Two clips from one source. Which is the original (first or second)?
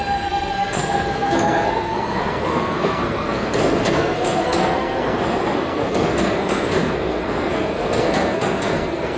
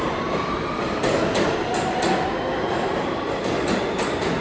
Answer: second